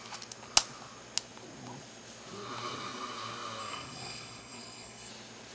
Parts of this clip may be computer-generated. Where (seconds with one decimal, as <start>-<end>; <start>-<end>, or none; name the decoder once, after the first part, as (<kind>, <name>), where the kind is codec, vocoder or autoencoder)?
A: 3.6-5.1 (codec, SNAC)